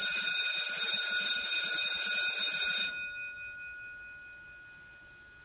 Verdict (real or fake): real